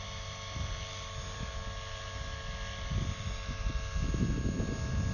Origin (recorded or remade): recorded